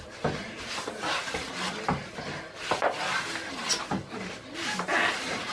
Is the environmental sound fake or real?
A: fake